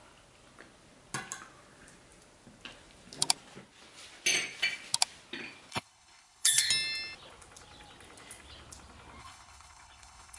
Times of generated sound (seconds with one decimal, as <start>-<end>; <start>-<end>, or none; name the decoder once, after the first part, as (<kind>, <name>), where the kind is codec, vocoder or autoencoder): 5.7-6.7 (codec, HILCodec); 9.2-10.4

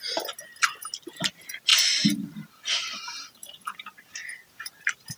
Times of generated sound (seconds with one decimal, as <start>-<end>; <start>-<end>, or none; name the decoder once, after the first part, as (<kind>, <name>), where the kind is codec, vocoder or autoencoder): 1.7-4.8 (vocoder, BigVGAN v2)

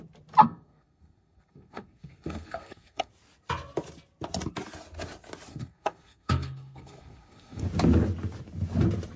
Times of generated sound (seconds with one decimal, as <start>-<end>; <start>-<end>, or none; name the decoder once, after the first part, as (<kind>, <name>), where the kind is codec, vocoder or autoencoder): 0.4-3.1 (codec, SNAC); 5.5-7.6

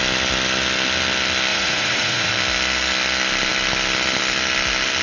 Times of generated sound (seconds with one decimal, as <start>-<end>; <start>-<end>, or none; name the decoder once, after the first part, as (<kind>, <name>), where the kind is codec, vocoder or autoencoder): 1.5-2.3 (vocoder, Vocos)

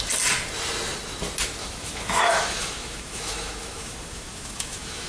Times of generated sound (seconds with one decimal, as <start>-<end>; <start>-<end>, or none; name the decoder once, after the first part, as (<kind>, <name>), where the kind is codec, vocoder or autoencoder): 1.6-5.1 (autoencoder, DAC-VAE)

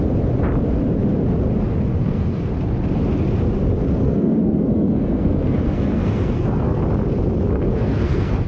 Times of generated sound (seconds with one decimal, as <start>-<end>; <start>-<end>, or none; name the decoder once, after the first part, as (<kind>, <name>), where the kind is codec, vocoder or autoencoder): 1.9-2.5 (codec, SNAC); 4.0-6.8; 7.5-8.5

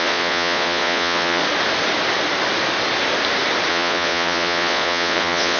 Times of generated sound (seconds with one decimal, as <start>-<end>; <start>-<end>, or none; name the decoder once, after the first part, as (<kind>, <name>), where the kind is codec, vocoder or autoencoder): 0.0-1.4 (vocoder, Vocos); 3.7-5.6